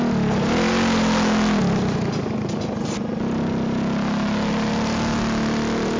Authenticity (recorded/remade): recorded